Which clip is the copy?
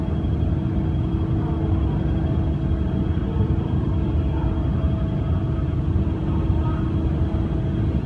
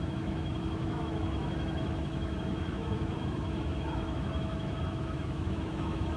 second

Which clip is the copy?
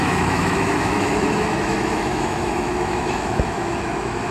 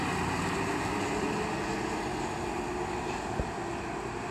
first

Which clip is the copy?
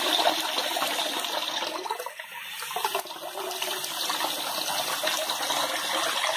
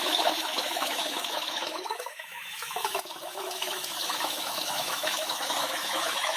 second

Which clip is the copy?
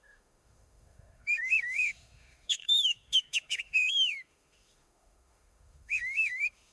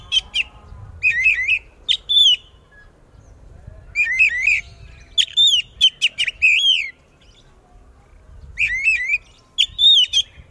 first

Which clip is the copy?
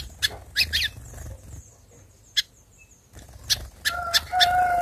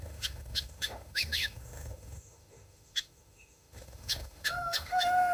second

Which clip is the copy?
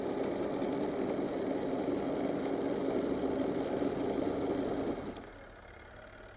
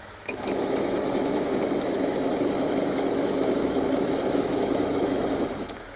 second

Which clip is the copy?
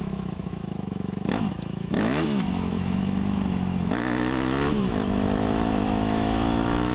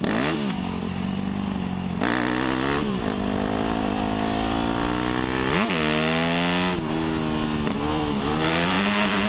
first